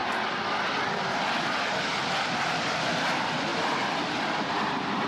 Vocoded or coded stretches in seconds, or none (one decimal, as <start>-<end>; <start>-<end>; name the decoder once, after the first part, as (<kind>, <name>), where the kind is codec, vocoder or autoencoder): 3.1-5.1 (vocoder, BigVGAN v2)